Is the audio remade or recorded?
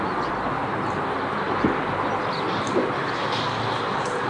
recorded